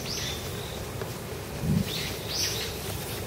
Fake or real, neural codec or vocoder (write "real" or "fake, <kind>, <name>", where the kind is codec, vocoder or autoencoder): real